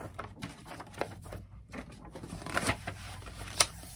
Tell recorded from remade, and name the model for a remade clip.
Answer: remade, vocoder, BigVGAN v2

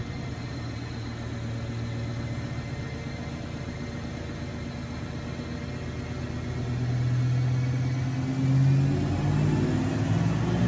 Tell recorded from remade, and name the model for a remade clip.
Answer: recorded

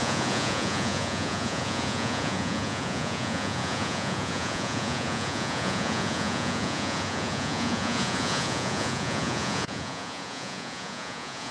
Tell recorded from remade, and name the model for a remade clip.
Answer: remade, vocoder, Vocos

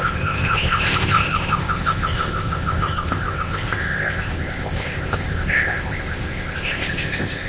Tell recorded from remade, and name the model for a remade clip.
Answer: remade, codec, ZipCodec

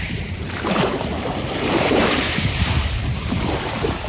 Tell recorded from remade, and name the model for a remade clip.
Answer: remade, vocoder, BigVGAN v2